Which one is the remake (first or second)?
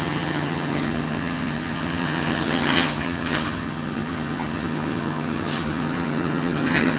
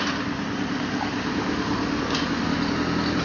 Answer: first